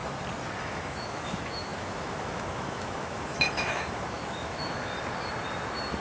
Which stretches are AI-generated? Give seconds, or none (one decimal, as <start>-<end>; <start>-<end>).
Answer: 0.6-4.9